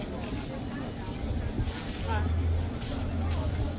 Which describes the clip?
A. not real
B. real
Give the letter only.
B